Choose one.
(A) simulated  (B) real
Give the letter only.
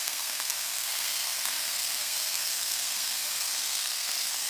A